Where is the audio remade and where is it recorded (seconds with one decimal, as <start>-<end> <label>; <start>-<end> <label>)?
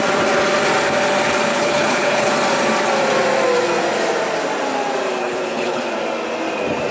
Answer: 0.0-1.5 recorded; 1.5-2.3 remade; 2.3-5.2 recorded; 5.2-5.8 remade; 5.8-6.9 recorded